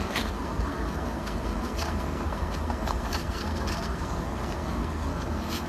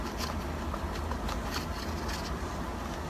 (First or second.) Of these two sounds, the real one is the second